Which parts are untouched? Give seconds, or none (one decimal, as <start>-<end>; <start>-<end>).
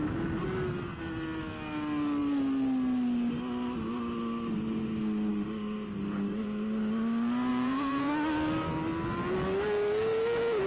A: 0.0-7.5; 8.1-10.7